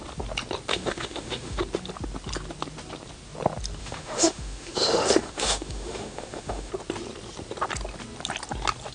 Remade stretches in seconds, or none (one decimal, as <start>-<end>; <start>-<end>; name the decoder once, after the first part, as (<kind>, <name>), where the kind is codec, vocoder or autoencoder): 0.7-1.6 (autoencoder, DAC-VAE); 3.8-6.7